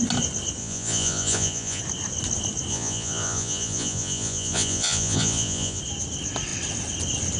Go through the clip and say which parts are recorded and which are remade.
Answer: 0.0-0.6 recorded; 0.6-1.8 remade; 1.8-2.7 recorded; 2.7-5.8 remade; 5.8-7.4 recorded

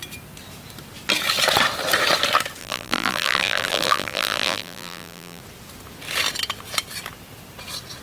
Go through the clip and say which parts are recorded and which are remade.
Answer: 0.0-2.6 recorded; 2.6-5.4 remade; 5.4-8.0 recorded

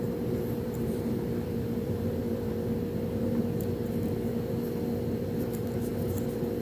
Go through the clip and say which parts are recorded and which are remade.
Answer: 0.0-2.2 remade; 2.2-5.4 recorded; 5.4-5.9 remade; 5.9-6.6 recorded

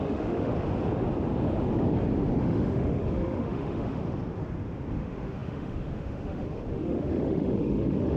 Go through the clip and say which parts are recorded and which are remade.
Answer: 0.0-0.5 remade; 0.5-2.4 recorded; 2.4-4.0 remade; 4.0-4.9 recorded; 4.9-8.2 remade

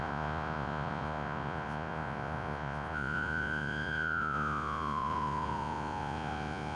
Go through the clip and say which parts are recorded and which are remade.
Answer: 0.0-6.8 remade

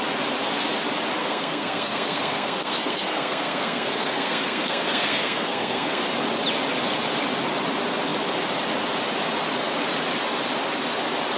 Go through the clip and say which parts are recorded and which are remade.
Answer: 0.0-1.2 recorded; 1.2-6.0 remade; 6.0-11.4 recorded